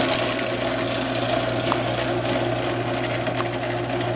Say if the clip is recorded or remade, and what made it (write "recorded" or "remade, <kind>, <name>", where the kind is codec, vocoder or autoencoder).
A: recorded